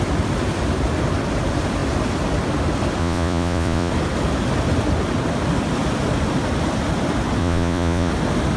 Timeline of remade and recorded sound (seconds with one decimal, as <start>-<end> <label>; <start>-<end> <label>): 0.0-3.0 recorded; 3.0-3.9 remade; 3.9-7.4 recorded; 7.4-8.1 remade; 8.1-8.6 recorded